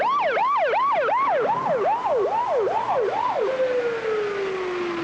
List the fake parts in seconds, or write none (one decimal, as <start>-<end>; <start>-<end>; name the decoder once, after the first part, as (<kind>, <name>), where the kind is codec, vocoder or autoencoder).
none